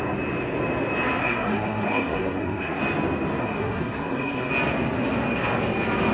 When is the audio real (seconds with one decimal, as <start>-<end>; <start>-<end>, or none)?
0.0-1.2; 2.8-3.4; 4.5-6.1

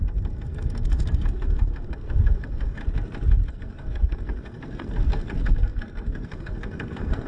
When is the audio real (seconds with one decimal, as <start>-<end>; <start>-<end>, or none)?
2.8-3.5

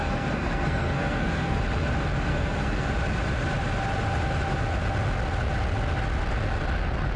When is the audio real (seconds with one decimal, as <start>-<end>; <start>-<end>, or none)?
1.6-2.3; 2.9-7.2

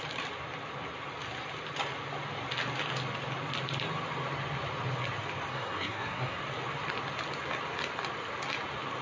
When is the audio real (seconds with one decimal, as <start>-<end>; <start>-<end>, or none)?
0.0-5.5; 6.4-9.0

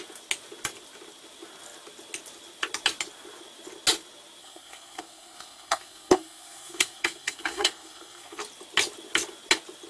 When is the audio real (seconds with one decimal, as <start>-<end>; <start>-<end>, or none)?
0.0-4.4; 8.4-9.9